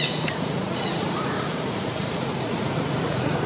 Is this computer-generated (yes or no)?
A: yes